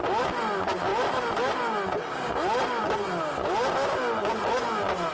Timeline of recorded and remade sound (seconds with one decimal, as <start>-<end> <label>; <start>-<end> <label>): 0.0-5.1 recorded